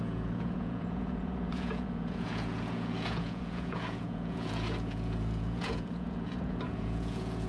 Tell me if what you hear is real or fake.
fake